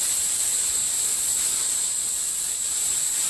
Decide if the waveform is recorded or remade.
remade